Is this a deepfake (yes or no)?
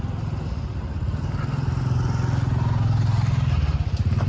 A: no